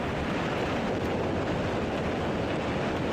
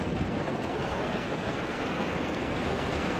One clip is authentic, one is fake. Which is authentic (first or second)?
first